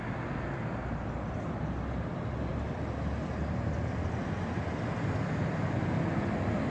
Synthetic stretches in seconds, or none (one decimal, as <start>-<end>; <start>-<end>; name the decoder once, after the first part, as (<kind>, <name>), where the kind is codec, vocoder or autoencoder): none